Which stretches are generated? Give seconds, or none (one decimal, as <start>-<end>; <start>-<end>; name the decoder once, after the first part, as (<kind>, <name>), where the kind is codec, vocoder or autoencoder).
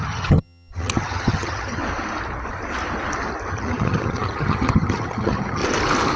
0.0-1.8 (vocoder, HiFi-GAN); 3.5-5.6